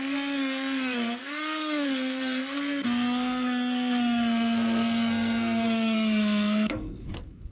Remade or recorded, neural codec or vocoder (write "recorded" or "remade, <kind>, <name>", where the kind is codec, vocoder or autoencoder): remade, codec, SNAC